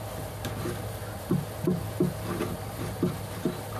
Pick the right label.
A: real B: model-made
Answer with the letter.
A